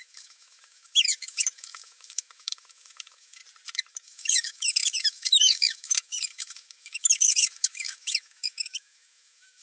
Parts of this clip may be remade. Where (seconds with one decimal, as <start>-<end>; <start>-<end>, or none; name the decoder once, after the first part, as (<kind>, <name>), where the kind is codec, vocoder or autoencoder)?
0.0-3.4 (autoencoder, DAC-VAE); 3.9-9.6